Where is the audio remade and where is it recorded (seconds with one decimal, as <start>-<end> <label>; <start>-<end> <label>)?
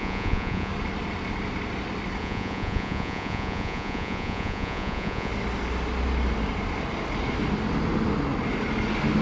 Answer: 0.0-0.7 remade; 0.7-2.2 recorded; 2.2-5.3 remade; 5.3-9.2 recorded